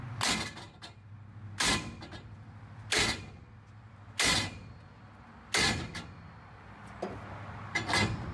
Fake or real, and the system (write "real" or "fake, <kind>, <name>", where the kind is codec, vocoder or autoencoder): real